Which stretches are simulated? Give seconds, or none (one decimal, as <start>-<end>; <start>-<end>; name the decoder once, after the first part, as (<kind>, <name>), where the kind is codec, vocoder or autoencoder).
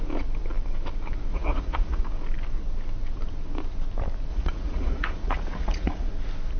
1.3-2.0 (vocoder, Vocos); 4.3-6.1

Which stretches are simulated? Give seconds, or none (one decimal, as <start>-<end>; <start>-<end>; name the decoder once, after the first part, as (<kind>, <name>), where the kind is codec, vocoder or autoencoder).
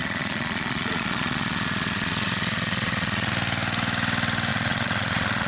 0.0-3.3 (vocoder, Vocos); 4.5-5.5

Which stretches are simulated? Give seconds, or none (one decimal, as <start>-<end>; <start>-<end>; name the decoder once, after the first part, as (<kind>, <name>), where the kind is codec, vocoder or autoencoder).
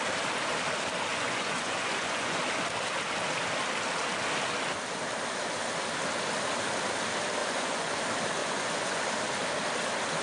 1.1-2.4 (vocoder, Vocos); 7.4-8.0; 8.4-9.0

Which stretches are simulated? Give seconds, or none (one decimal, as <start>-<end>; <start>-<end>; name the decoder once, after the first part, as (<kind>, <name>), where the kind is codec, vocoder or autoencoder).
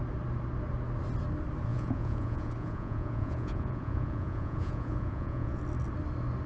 1.7-5.6 (vocoder, Vocos)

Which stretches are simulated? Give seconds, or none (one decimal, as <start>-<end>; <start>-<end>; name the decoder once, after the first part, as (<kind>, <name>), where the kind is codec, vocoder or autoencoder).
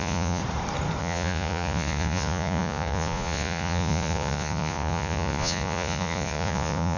0.0-0.4 (vocoder, Vocos); 1.0-7.0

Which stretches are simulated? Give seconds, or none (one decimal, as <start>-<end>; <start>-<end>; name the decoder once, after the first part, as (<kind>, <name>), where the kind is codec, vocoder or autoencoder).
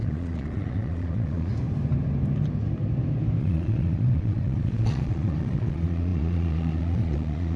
0.0-1.5 (vocoder, Vocos); 3.4-7.6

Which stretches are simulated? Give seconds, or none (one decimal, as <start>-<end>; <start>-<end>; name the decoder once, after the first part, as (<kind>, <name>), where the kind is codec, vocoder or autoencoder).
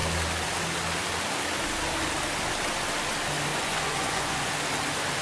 3.5-4.5 (vocoder, Vocos)